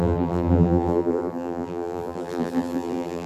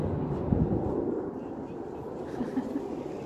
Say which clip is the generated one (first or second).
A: first